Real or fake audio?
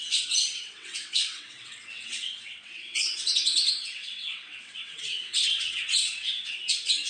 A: fake